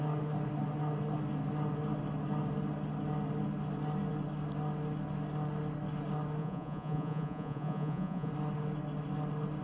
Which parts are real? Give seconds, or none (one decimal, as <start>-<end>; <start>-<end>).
0.0-6.4; 8.3-9.6